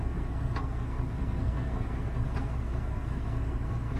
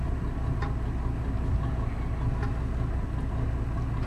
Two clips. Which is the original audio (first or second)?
second